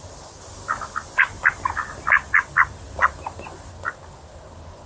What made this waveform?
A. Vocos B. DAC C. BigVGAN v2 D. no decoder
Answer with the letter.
D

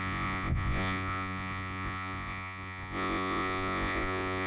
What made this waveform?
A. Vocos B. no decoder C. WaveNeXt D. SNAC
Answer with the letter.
A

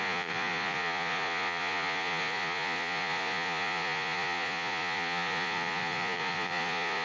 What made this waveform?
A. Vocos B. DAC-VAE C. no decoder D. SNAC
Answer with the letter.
A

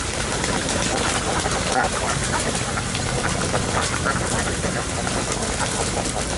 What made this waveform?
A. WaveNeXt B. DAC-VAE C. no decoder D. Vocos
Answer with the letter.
C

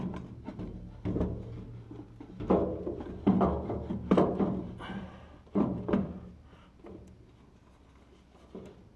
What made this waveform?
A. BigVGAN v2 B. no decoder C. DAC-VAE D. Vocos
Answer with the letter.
B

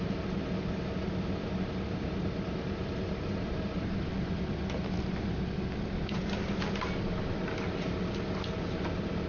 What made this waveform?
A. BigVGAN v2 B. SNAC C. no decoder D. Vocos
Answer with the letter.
C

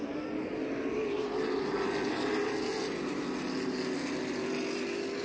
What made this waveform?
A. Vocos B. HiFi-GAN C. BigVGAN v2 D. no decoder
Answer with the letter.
D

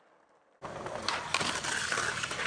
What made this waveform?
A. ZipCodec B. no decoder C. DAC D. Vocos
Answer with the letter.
B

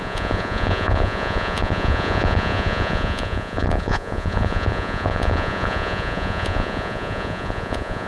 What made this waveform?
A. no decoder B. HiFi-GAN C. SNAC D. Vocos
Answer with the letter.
D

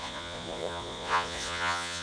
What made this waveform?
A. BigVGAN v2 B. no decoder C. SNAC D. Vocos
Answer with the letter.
D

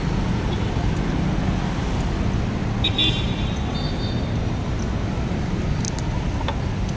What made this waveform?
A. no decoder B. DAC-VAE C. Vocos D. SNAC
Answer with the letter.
A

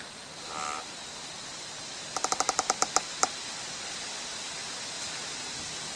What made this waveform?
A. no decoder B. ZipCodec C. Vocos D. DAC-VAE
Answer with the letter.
A